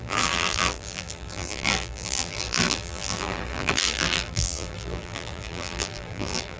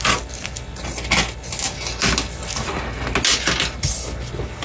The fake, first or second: first